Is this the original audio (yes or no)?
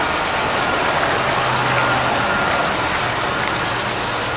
yes